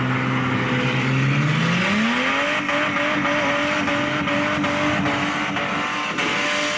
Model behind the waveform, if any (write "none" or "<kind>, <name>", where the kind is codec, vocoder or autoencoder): none